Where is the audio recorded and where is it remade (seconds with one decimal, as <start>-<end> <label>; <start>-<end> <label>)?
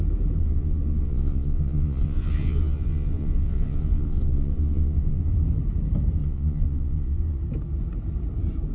0.0-0.4 recorded; 0.4-5.3 remade; 5.3-6.2 recorded; 6.2-7.4 remade; 7.4-8.7 recorded